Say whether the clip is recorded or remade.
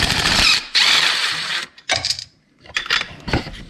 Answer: remade